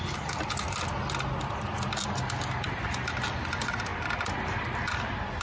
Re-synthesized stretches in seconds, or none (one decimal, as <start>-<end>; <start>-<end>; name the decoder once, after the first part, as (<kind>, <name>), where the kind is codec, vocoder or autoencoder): none